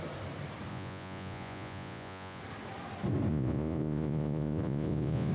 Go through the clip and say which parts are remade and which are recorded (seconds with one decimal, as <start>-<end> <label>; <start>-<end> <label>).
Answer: 0.0-0.7 recorded; 0.7-2.4 remade; 2.4-3.3 recorded; 3.3-5.3 remade